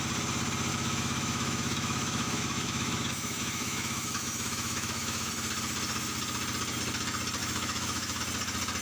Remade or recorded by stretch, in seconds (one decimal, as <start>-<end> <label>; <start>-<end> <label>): 0.0-0.7 recorded; 0.7-5.3 remade; 5.3-7.4 recorded; 7.4-8.2 remade; 8.2-8.8 recorded